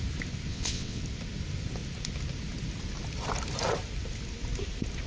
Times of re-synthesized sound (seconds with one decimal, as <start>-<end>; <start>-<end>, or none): 0.5-1.0